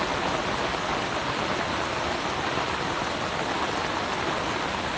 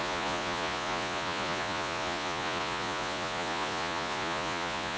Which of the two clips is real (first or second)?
first